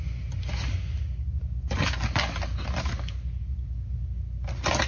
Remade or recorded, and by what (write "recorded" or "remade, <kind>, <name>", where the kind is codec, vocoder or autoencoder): recorded